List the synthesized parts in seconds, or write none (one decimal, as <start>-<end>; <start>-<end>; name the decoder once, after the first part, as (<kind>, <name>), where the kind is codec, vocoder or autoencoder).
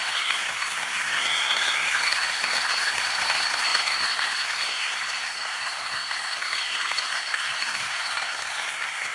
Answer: 0.0-9.1 (codec, SNAC)